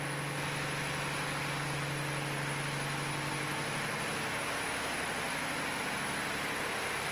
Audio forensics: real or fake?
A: real